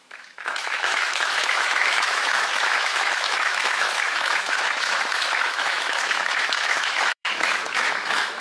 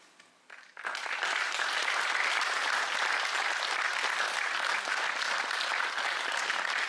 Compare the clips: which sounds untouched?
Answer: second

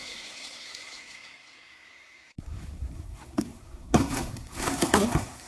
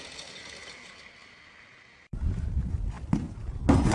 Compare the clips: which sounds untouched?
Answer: second